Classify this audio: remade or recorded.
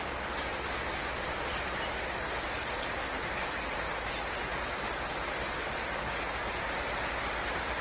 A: recorded